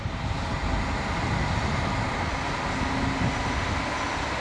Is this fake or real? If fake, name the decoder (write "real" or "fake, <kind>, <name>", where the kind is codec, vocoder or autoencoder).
real